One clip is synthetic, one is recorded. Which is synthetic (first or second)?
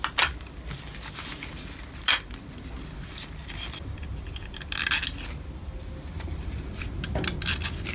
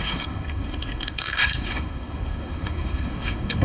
second